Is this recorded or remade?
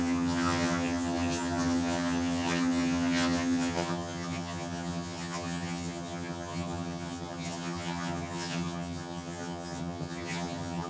remade